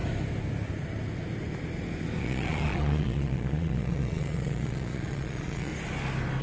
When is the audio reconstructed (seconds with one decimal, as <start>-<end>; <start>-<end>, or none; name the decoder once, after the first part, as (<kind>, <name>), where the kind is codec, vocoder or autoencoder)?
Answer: 2.2-5.7 (vocoder, Vocos)